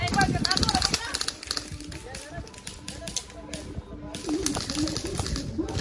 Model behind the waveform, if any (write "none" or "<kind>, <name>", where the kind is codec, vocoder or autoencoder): none